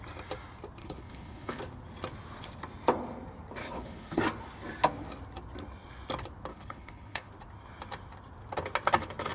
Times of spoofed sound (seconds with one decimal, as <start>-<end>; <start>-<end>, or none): 0.8-1.6; 3.6-4.2; 6.5-7.3